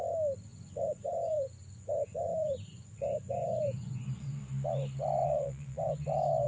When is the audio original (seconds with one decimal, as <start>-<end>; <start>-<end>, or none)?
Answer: 0.0-0.5; 4.4-5.2; 5.9-6.5